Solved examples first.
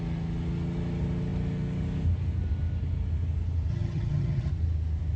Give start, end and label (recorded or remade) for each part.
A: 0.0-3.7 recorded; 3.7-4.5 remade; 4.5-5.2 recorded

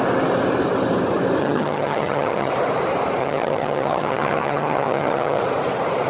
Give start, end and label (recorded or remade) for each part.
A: 0.0-1.4 recorded; 1.4-2.5 remade; 2.5-3.2 recorded; 3.2-5.4 remade; 5.4-6.1 recorded

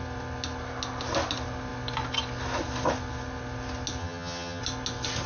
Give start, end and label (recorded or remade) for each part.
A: 0.0-4.0 recorded; 4.0-4.6 remade; 4.6-5.3 recorded

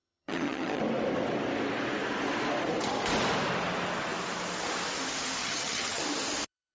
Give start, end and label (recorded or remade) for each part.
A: 0.0-0.8 remade; 0.8-5.4 recorded; 5.4-6.0 remade; 6.0-6.7 recorded

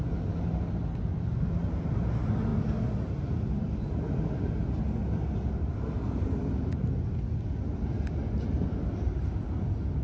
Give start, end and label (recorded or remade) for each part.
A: 0.0-10.0 recorded

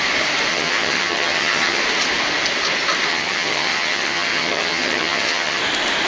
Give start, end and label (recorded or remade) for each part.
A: 0.0-0.5 recorded; 0.5-1.8 remade; 1.8-3.1 recorded; 3.1-5.6 remade; 5.6-6.1 recorded